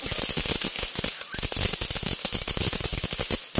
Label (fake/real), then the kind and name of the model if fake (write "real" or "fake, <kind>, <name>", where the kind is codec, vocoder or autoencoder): real